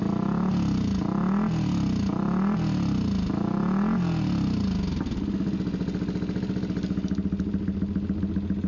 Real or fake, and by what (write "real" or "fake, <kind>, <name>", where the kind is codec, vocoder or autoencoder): real